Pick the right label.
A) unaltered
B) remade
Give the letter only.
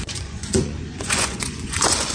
B